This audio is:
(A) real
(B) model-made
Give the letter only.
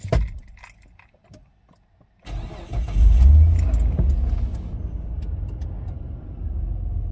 A